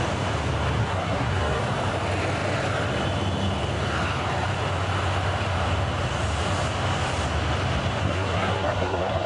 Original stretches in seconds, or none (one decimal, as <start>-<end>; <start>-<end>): 0.0-0.8; 1.6-8.0